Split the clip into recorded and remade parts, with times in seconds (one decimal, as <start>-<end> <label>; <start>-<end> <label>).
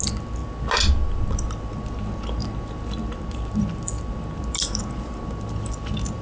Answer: 0.0-6.2 recorded